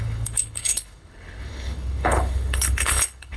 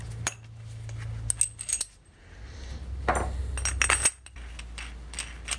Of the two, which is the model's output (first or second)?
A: first